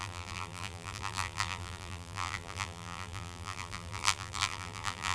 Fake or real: fake